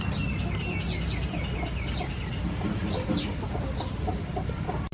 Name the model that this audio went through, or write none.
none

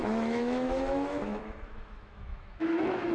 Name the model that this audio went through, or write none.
autoencoder, DAC-VAE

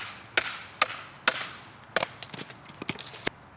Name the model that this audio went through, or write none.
none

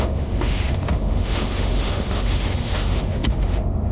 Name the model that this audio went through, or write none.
autoencoder, DAC-VAE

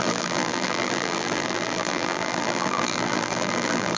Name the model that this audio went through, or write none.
vocoder, BigVGAN v2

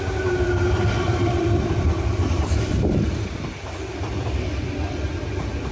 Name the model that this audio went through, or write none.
vocoder, BigVGAN v2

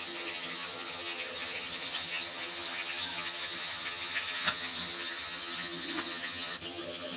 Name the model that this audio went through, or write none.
vocoder, HiFi-GAN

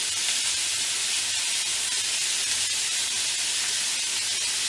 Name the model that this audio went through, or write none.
none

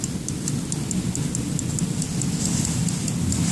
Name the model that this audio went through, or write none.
none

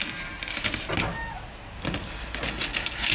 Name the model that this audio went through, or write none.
none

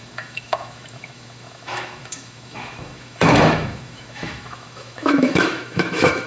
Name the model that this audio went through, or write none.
autoencoder, DAC-VAE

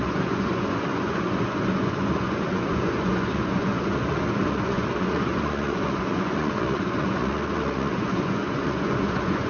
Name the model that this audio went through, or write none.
vocoder, Vocos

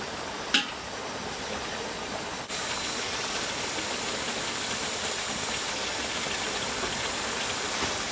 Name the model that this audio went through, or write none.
vocoder, BigVGAN v2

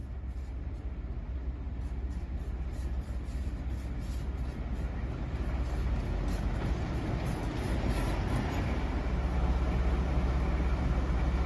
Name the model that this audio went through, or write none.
none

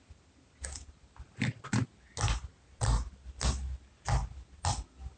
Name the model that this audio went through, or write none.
none